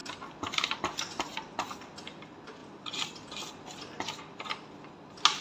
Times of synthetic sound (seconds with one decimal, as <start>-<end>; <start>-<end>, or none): none